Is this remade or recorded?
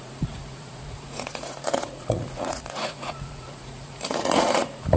remade